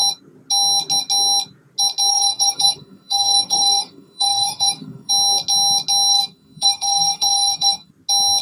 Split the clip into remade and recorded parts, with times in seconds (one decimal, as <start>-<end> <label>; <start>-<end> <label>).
0.0-2.1 recorded; 2.1-5.1 remade; 5.1-6.1 recorded; 6.1-7.9 remade; 7.9-8.4 recorded